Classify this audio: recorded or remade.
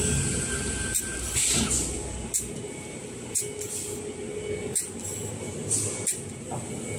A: recorded